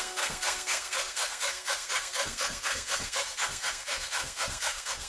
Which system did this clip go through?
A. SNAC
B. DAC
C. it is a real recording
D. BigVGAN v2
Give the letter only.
A